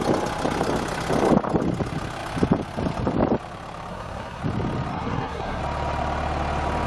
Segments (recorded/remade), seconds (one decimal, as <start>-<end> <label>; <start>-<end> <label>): 0.0-3.9 recorded; 3.9-4.4 remade; 4.4-4.9 recorded; 4.9-5.6 remade; 5.6-6.9 recorded